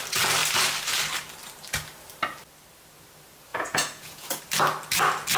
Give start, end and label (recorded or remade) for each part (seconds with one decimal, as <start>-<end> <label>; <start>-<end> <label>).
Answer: 0.0-3.5 recorded; 3.5-4.4 remade; 4.4-5.4 recorded